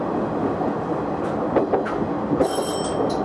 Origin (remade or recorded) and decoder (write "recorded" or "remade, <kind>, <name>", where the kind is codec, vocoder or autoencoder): recorded